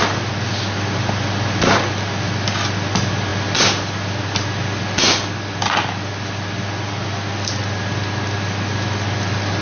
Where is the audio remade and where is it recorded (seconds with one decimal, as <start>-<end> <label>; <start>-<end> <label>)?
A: 0.0-9.6 recorded